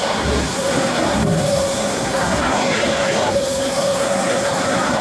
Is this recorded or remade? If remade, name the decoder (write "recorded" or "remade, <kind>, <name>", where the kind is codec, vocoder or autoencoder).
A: remade, codec, SNAC